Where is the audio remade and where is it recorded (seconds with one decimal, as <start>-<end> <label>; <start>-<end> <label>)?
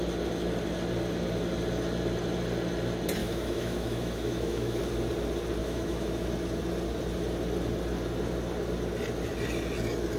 0.0-3.2 recorded; 3.2-4.8 remade; 4.8-5.6 recorded; 5.6-6.3 remade; 6.3-10.2 recorded